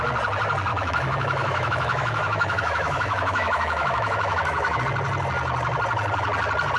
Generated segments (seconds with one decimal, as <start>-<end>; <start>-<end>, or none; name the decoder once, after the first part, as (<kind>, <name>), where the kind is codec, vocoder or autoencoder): 0.7-4.8 (autoencoder, DAC-VAE)